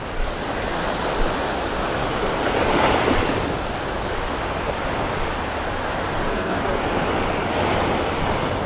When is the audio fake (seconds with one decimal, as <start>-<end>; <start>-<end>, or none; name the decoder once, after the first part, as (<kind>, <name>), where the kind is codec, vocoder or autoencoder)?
6.3-6.9 (codec, SNAC)